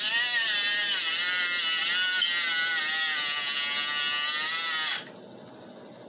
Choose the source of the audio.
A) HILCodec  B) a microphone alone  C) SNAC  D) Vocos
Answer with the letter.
B